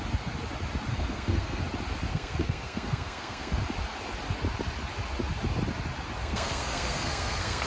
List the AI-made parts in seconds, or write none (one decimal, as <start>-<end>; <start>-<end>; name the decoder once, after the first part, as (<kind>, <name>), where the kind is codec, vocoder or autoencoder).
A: 0.9-1.6 (codec, SNAC); 2.1-3.6; 6.2-7.7